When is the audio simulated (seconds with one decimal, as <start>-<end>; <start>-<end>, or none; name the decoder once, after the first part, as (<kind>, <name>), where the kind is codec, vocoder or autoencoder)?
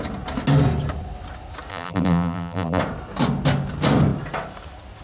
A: 1.7-2.8 (vocoder, BigVGAN v2)